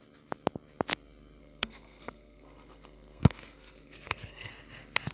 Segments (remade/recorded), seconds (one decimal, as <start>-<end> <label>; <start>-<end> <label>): 0.0-1.4 recorded; 1.4-4.5 remade; 4.5-5.1 recorded